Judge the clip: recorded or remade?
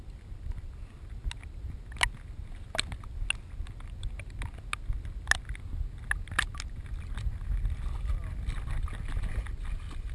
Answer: recorded